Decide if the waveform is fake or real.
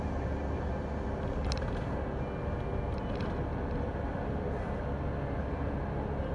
real